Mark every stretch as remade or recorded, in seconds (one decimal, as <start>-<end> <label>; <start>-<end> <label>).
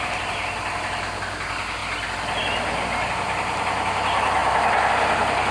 0.0-5.5 recorded